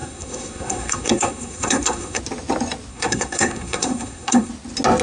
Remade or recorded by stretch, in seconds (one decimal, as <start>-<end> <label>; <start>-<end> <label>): 0.0-2.2 remade; 2.2-2.9 recorded; 2.9-4.5 remade; 4.5-5.0 recorded